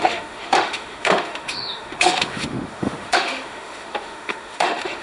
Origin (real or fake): fake